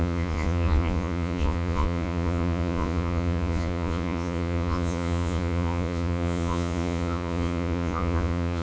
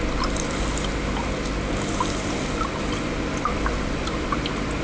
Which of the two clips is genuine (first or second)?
second